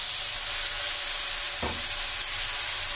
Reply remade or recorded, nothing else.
recorded